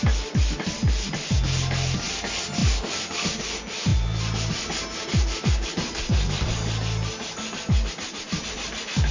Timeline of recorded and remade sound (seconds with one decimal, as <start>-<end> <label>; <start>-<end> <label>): 0.0-9.1 recorded